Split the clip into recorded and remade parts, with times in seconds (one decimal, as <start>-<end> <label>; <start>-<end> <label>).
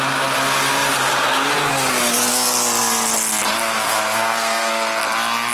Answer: 0.0-3.9 recorded; 3.9-4.7 remade; 4.7-5.5 recorded